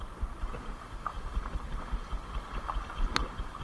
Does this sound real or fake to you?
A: real